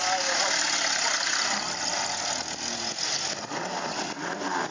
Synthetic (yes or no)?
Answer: no